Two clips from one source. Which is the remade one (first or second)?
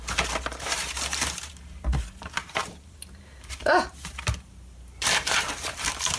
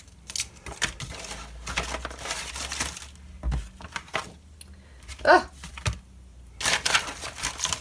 first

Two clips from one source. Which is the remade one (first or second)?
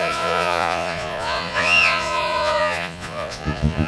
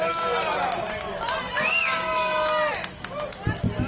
first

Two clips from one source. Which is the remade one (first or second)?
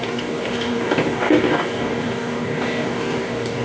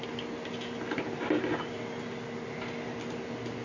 first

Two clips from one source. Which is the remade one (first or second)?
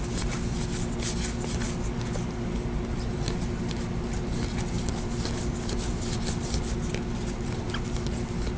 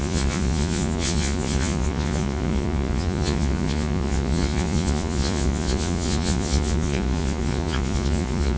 second